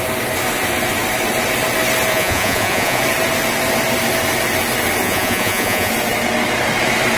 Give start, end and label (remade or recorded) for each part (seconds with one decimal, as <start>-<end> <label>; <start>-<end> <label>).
0.0-2.1 recorded; 2.1-3.0 remade; 3.0-5.0 recorded; 5.0-5.9 remade; 5.9-7.2 recorded